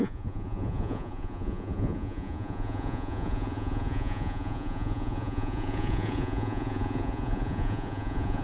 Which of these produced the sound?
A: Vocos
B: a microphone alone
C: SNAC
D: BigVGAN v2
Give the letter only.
A